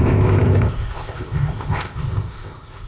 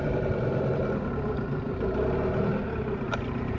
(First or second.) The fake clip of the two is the first